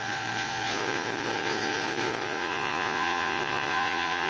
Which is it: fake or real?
fake